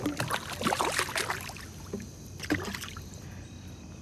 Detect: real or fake real